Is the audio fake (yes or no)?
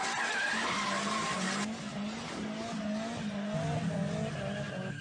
no